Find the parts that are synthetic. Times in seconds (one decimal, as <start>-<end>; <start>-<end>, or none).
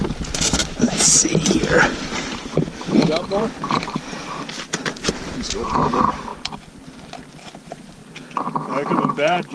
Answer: 0.0-6.3; 7.3-8.0; 8.9-9.5